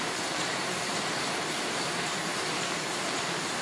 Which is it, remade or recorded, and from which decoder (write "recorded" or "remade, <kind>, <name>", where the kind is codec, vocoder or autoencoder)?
remade, vocoder, BigVGAN v2